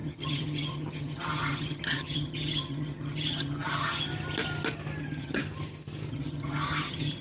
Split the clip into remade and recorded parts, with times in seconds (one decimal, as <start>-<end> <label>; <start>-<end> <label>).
0.0-4.1 remade; 4.1-5.0 recorded; 5.0-5.4 remade; 5.4-6.1 recorded; 6.1-7.2 remade